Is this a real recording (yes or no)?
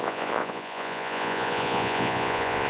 no